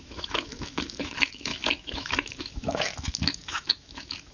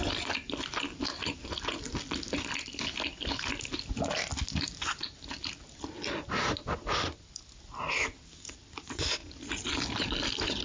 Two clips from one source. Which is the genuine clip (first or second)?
second